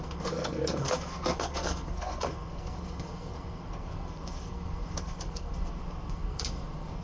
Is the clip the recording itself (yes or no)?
no